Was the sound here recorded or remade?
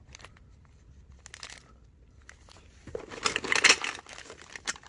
recorded